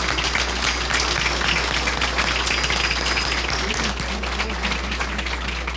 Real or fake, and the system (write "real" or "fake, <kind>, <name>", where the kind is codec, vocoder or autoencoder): real